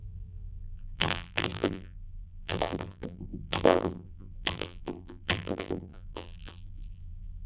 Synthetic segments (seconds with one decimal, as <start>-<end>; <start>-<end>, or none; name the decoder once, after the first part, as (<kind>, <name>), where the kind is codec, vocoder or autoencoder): 0.0-7.5 (vocoder, BigVGAN v2)